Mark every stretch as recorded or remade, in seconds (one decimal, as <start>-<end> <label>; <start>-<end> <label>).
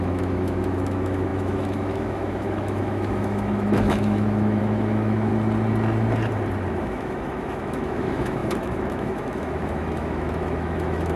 0.0-5.3 remade; 5.3-6.7 recorded; 6.7-11.2 remade